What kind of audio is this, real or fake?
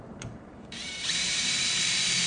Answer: fake